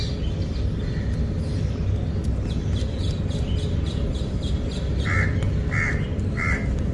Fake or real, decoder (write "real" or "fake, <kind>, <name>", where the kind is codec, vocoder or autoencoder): real